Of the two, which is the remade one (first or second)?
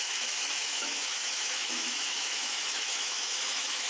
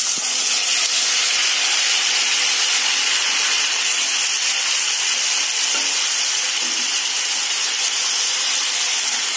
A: first